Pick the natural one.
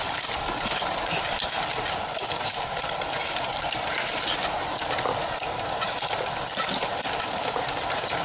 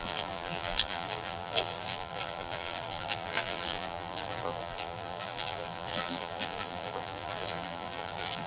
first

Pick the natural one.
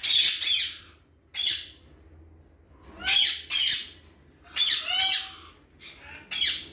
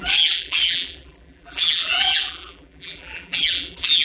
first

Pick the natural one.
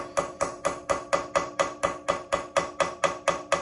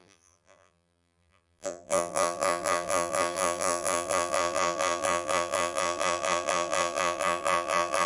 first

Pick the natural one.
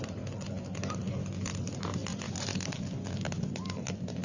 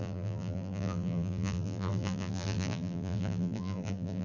first